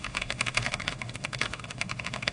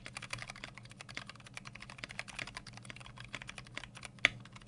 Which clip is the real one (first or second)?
second